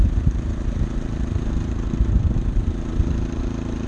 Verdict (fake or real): fake